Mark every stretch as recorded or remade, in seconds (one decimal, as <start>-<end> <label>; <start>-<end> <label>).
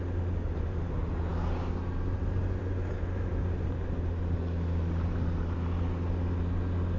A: 0.0-7.0 recorded